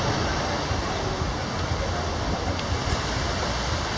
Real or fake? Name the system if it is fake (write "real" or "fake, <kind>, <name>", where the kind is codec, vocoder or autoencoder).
real